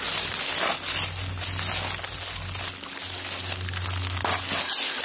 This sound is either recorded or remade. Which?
recorded